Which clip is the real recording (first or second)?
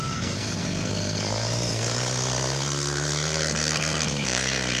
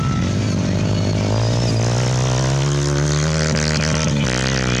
second